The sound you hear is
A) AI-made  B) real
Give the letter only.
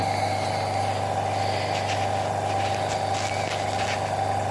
B